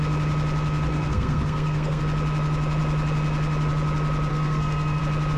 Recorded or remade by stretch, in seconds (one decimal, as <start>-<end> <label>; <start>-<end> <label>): 0.0-0.9 recorded; 0.9-2.0 remade; 2.0-4.3 recorded; 4.3-5.0 remade; 5.0-5.4 recorded